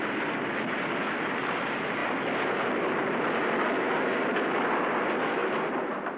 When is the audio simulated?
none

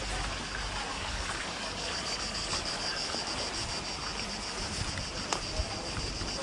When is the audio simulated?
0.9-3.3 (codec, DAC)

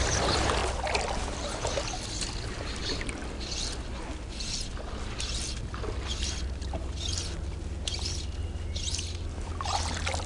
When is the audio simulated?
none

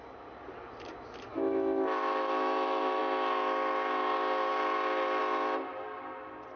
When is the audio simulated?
1.3-3.0 (autoencoder, DAC-VAE)

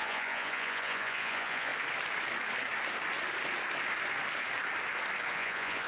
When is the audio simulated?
0.0-1.7 (vocoder, Vocos); 5.2-5.9

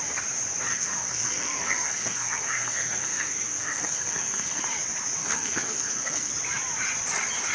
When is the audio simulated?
0.7-4.6 (codec, SNAC); 5.2-6.3

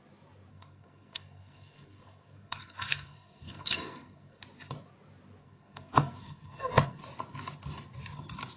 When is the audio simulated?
0.5-4.4 (codec, SNAC); 5.4-7.0

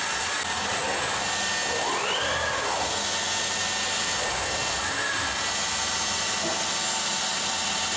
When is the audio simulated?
none